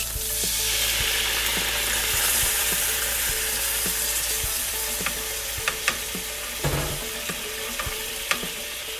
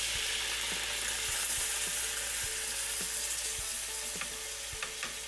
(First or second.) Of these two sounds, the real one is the second